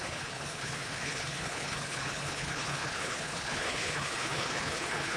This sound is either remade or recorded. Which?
remade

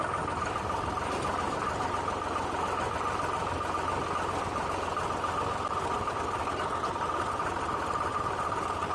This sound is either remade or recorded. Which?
recorded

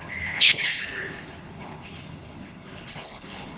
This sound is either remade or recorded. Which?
remade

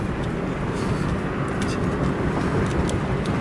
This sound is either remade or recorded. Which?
recorded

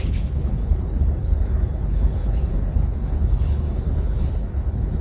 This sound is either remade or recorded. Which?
remade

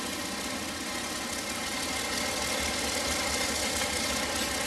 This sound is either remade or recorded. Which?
recorded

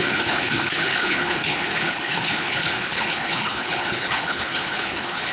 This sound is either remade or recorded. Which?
remade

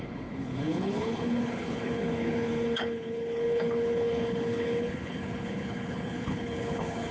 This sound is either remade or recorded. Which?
remade